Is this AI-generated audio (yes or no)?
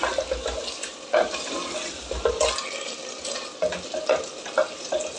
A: no